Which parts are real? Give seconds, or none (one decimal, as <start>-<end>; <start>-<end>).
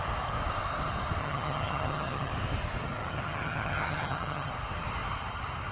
0.0-1.2; 2.3-3.0; 4.5-5.7